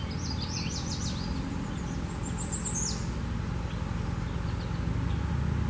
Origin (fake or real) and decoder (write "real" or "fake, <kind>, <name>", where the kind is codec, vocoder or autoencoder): real